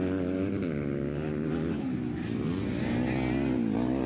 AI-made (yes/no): no